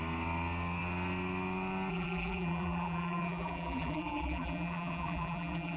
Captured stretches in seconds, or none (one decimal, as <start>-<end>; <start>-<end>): 0.0-1.9